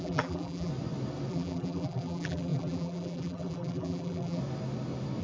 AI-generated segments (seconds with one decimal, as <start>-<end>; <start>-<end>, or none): 0.0-0.7; 1.3-4.4